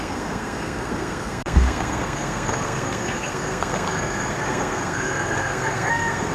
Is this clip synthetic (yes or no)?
yes